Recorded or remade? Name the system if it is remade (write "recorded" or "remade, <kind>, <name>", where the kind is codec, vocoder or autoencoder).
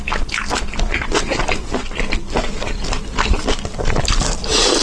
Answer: recorded